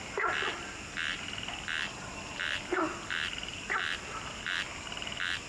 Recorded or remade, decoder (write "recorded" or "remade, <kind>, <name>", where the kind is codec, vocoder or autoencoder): recorded